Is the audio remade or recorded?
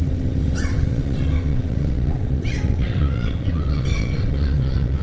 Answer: remade